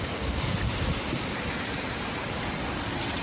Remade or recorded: recorded